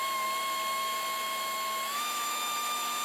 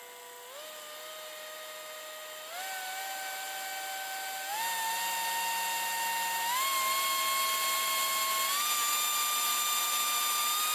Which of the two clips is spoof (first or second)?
first